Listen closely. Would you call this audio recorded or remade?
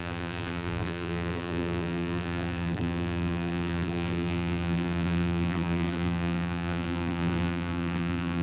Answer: remade